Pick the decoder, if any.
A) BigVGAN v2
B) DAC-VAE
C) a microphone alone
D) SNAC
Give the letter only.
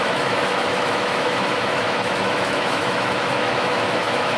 B